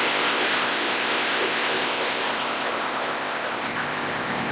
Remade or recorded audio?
remade